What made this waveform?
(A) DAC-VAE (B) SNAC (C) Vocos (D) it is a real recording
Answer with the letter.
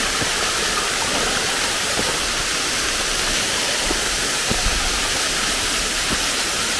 D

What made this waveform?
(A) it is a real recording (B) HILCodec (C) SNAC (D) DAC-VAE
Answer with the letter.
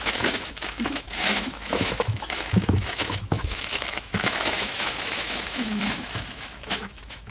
D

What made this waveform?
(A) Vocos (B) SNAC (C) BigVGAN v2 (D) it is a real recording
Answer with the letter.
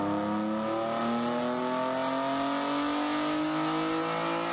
D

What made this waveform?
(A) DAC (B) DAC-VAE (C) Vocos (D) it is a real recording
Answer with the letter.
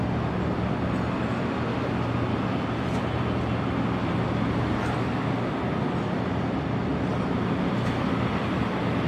D